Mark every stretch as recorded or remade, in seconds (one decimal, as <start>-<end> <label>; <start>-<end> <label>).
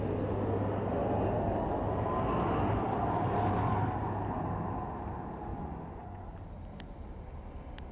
0.0-5.5 recorded; 5.5-6.3 remade; 6.3-7.9 recorded